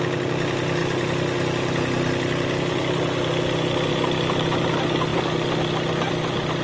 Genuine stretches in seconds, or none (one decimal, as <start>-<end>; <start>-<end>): 0.0-6.6

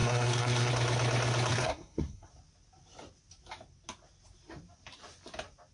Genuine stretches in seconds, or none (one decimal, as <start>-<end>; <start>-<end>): 0.7-1.5; 2.3-5.7